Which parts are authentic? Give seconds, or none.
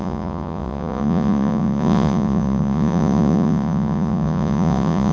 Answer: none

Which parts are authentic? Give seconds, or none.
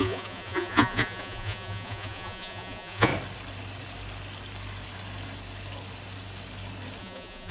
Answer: 3.1-7.0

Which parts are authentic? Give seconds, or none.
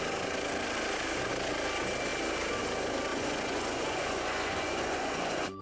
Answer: 0.0-3.1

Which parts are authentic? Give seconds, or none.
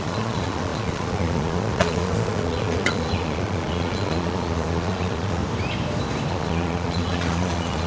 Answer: 5.4-6.3